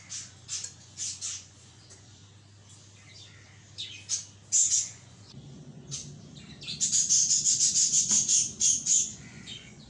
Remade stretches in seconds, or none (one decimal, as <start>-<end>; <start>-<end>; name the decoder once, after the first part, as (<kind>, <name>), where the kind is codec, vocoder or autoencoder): 0.0-2.2 (vocoder, Vocos); 4.7-6.0; 7.5-9.9